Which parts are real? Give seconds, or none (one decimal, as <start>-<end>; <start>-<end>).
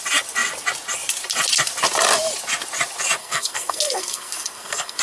0.0-3.2